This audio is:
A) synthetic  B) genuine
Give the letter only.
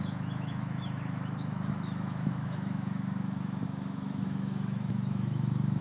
A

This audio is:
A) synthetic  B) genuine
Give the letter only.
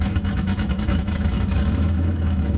A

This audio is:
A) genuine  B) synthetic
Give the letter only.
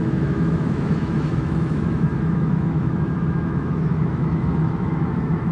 B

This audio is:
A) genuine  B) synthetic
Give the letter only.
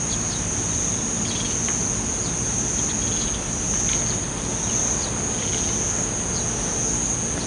A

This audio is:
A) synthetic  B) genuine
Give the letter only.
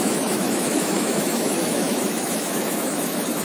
A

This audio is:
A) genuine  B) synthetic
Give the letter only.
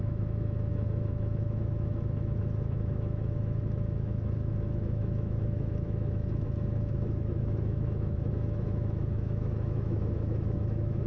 B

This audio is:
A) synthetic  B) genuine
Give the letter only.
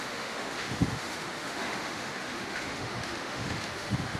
A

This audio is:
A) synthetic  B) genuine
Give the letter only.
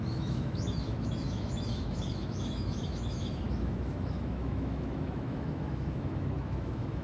A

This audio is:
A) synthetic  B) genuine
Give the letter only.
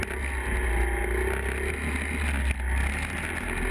B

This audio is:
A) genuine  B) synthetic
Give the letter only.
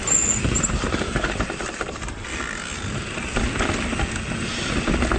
A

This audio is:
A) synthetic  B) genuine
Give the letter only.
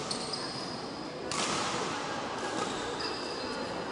B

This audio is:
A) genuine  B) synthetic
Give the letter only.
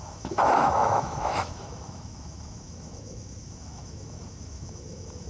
B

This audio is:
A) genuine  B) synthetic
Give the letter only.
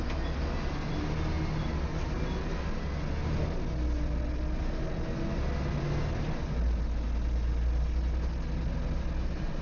A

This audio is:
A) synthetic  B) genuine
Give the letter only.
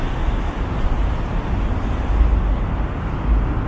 B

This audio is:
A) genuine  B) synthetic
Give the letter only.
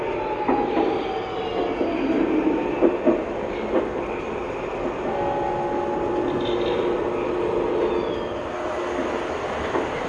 A